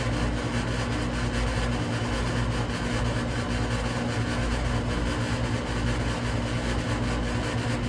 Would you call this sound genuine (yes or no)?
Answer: yes